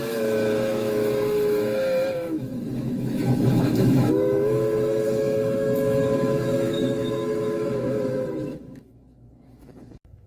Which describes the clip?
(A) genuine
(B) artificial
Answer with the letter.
B